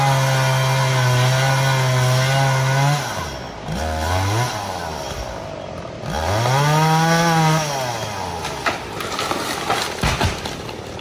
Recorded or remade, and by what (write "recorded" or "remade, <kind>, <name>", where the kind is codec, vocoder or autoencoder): recorded